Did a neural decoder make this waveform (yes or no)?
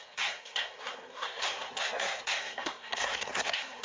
yes